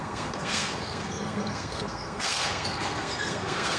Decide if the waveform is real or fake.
fake